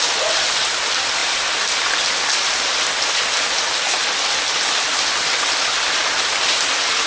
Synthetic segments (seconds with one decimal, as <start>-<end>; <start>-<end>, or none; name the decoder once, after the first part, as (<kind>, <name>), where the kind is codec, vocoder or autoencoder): none